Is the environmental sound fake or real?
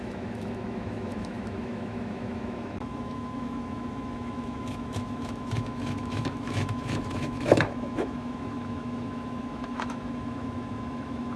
fake